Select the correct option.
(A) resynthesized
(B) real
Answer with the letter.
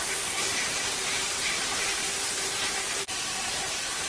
A